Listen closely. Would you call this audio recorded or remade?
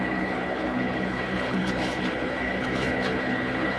remade